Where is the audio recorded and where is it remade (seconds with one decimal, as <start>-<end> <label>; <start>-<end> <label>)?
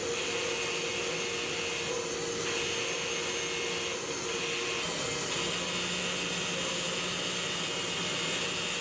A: 0.0-8.8 recorded